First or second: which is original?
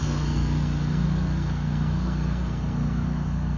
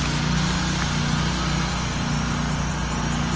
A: second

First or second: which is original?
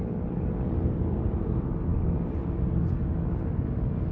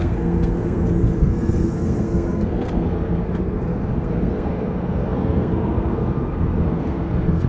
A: first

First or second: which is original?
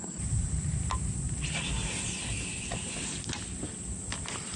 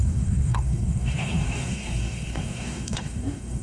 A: first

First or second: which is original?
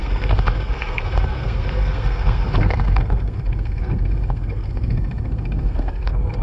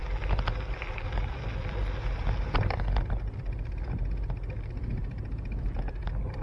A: second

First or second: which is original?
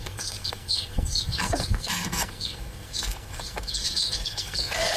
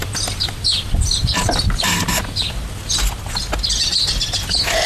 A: second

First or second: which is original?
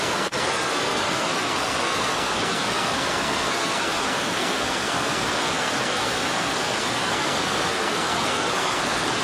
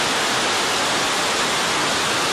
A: second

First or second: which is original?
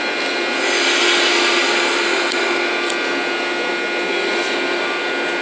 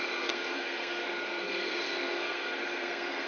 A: first